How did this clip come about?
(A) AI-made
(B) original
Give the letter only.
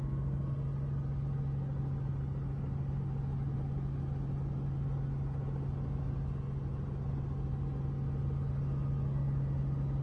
B